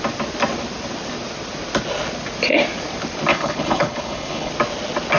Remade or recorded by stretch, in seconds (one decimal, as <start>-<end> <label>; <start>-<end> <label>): 0.0-3.3 recorded; 3.3-4.5 remade; 4.5-5.2 recorded